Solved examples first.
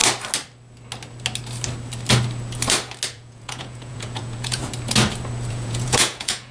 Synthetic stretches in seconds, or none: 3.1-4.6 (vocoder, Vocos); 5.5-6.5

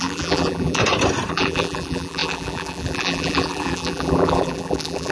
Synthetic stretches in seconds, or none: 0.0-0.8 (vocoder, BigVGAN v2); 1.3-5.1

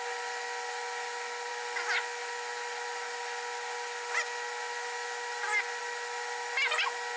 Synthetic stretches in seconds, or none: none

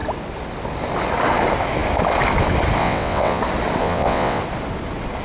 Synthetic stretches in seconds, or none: 2.8-3.4 (vocoder, WaveNeXt); 3.8-4.4

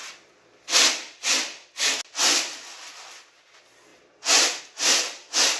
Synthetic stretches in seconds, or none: none

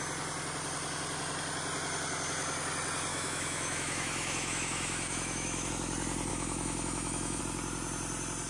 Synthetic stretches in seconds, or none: 3.1-5.7 (autoencoder, DAC-VAE); 6.3-7.4

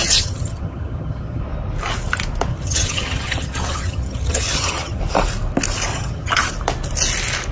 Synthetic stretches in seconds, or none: 0.0-1.4 (vocoder, HiFi-GAN); 2.5-5.0; 5.9-6.5

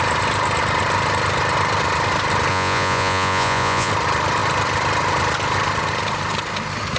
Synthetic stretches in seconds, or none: 2.5-3.9 (vocoder, Vocos)